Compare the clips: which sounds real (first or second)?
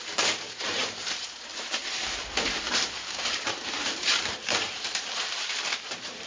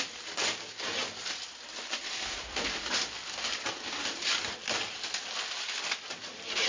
second